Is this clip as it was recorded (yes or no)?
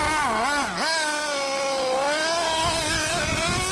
yes